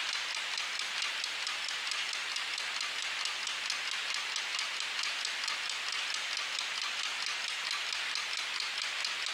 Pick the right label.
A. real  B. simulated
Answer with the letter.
A